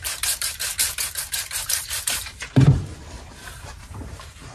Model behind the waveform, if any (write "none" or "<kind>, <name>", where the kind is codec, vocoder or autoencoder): vocoder, BigVGAN v2